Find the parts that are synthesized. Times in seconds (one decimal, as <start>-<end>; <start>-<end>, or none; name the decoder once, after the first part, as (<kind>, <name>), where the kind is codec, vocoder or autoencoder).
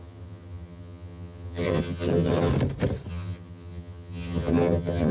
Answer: 0.0-2.5 (vocoder, HiFi-GAN); 3.1-5.1